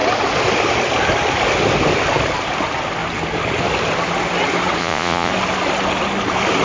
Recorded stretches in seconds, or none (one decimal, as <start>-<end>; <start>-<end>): 0.0-4.8; 5.3-6.6